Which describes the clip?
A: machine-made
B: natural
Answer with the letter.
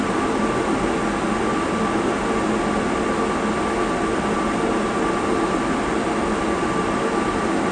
B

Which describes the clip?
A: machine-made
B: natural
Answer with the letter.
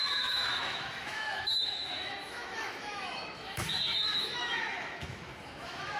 A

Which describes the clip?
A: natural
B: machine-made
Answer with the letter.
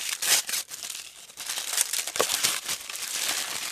B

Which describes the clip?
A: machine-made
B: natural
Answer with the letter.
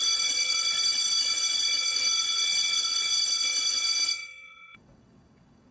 A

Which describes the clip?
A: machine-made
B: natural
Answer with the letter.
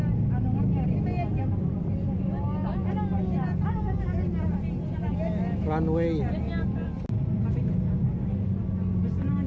B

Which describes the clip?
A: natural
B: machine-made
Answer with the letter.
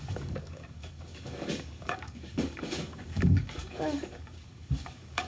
B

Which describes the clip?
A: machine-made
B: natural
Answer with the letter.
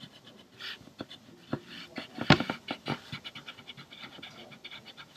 B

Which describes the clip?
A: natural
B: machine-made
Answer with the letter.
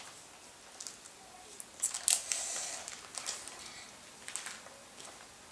A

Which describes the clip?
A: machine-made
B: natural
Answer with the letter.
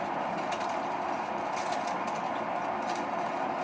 B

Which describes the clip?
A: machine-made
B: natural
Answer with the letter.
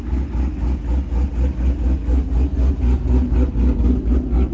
B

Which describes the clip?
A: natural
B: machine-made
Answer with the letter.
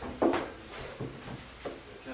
A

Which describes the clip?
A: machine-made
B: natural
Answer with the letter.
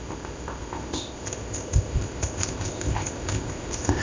A